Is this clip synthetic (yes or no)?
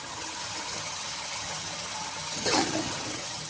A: yes